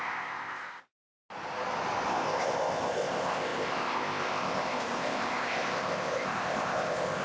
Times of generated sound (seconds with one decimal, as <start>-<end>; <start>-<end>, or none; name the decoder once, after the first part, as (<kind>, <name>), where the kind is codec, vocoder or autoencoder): 0.0-0.8 (codec, ZipCodec); 2.1-7.2